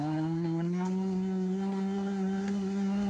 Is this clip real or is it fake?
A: fake